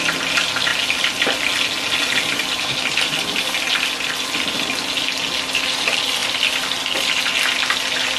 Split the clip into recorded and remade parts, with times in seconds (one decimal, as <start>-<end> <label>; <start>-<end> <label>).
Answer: 0.0-8.2 recorded